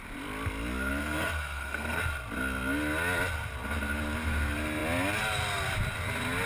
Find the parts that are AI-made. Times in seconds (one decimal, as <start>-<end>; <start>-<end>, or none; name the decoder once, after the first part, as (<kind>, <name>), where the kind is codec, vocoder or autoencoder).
1.0-2.0 (codec, SNAC)